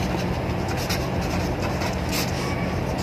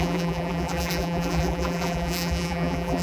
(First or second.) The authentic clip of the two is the first